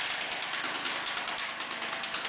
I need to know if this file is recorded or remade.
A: recorded